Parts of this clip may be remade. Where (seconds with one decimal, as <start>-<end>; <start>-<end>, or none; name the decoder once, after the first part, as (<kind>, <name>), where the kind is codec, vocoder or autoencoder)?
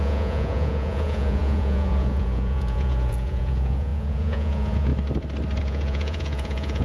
0.0-4.9 (vocoder, Vocos); 5.6-6.8